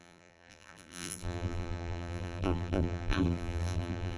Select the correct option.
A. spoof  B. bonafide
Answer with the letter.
A